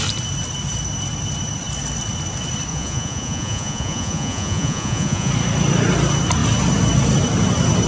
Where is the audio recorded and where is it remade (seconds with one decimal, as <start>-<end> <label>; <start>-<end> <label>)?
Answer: 0.0-2.7 recorded; 2.7-5.3 remade; 5.3-7.9 recorded